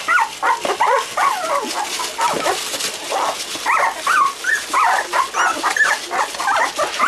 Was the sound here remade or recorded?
recorded